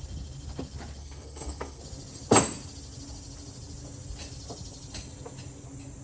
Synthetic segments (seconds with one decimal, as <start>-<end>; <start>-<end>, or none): 1.0-1.8